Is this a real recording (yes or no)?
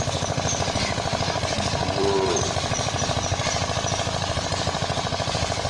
no